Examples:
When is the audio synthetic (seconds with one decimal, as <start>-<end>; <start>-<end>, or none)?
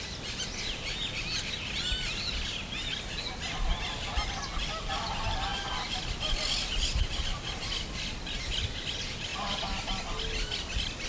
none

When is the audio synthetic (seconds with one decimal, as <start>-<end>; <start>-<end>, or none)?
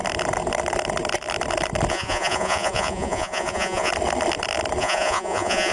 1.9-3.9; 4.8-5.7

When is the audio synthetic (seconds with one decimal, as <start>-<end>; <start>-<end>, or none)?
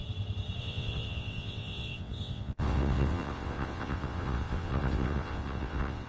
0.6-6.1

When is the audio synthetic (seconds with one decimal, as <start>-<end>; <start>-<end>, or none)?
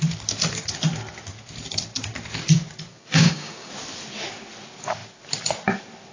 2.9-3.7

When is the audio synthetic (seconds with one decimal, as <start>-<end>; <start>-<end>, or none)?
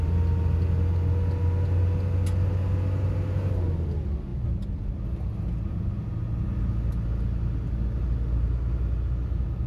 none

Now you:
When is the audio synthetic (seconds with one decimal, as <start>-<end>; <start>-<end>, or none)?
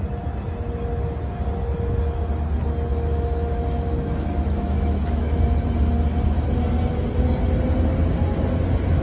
2.9-5.4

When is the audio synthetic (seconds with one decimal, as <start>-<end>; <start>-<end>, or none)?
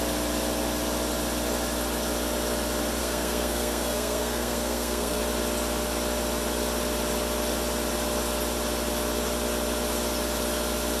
3.0-5.2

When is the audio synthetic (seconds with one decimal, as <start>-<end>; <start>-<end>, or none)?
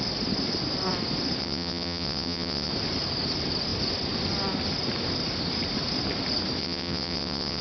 1.4-2.7; 6.6-7.6